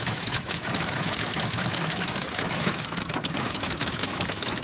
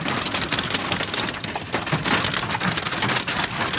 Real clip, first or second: second